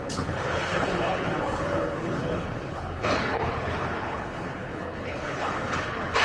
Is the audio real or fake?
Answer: fake